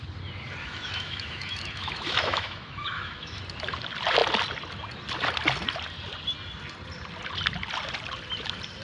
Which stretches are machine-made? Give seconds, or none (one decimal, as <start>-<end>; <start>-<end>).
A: 0.6-3.4